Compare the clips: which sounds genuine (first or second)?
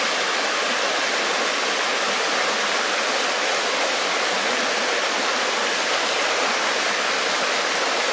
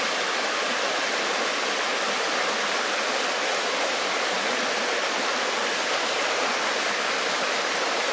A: first